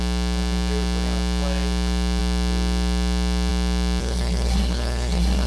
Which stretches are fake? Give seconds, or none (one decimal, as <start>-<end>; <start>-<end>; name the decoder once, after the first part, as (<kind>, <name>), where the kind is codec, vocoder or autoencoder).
4.0-5.5 (codec, SNAC)